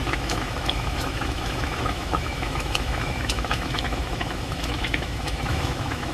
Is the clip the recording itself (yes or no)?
no